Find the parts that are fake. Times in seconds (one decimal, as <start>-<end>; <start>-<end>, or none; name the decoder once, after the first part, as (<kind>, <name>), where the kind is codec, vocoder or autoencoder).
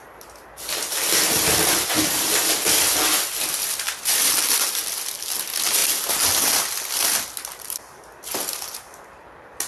none